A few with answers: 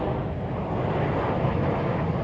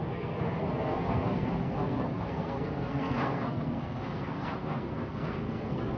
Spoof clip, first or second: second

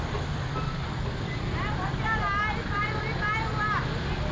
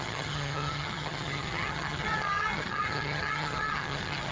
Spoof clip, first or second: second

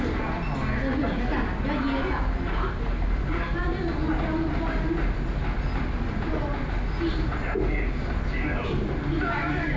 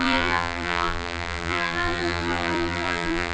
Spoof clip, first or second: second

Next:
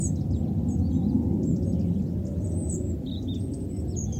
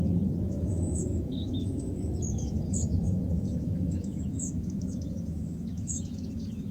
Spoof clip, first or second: second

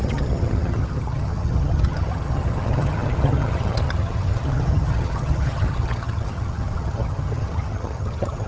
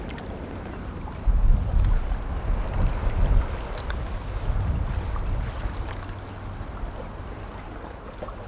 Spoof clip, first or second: first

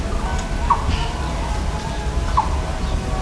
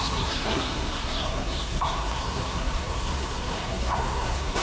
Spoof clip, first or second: second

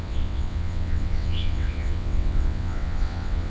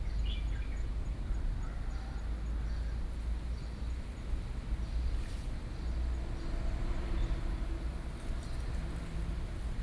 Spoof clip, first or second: first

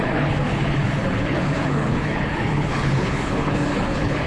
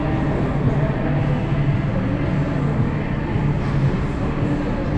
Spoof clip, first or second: first